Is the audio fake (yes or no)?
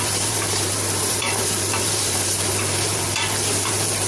yes